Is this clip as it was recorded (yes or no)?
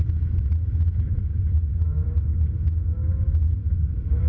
yes